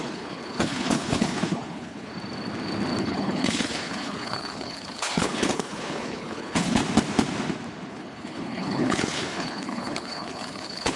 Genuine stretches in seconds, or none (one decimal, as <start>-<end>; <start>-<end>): 2.1-3.0; 6.8-7.9